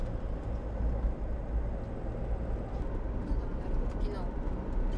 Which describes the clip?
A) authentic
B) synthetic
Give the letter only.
A